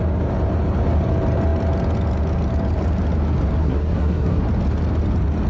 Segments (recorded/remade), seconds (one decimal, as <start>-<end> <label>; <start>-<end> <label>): 0.0-3.6 recorded; 3.6-4.4 remade; 4.4-5.5 recorded